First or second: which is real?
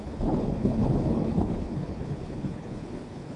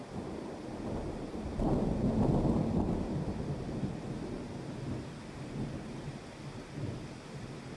second